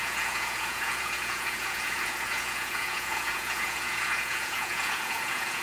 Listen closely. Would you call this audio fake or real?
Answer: fake